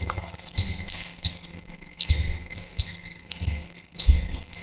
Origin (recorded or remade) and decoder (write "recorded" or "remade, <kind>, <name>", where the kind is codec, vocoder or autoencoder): remade, codec, SNAC